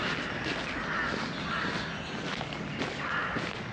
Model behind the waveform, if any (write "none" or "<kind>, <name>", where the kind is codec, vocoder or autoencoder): none